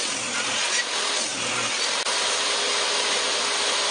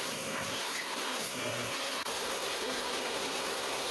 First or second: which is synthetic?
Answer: second